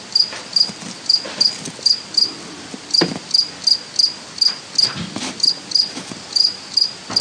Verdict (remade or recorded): recorded